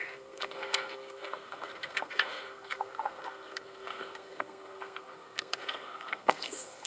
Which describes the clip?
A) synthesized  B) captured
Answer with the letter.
A